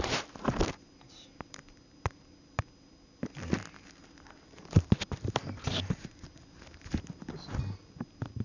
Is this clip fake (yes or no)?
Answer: no